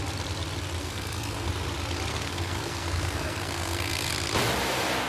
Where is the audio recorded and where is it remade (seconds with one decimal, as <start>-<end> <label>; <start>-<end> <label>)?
0.0-0.8 recorded; 0.8-1.5 remade; 1.5-2.1 recorded; 2.1-4.1 remade; 4.1-5.1 recorded